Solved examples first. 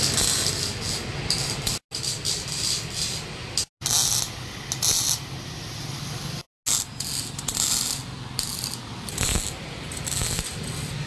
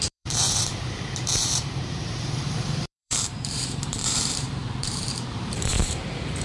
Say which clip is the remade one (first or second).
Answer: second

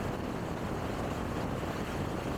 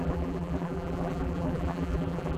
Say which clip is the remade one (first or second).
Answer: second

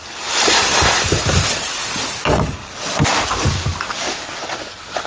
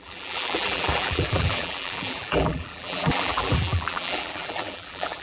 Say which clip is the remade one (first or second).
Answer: second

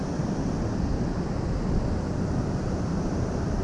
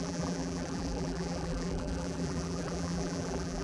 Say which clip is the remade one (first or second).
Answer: second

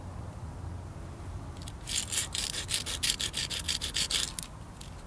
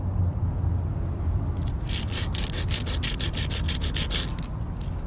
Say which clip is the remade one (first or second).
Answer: first